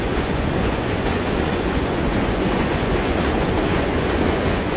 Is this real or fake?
fake